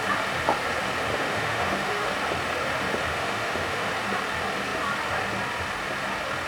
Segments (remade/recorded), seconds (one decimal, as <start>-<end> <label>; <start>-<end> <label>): 0.0-1.1 recorded; 1.1-2.1 remade; 2.1-3.1 recorded; 3.1-3.9 remade; 3.9-6.5 recorded